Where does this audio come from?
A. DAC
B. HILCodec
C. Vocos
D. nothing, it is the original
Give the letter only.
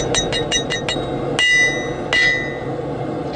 D